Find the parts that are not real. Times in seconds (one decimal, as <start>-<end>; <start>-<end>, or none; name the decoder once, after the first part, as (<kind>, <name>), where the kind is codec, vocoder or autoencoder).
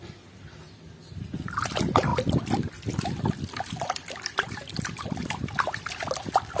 none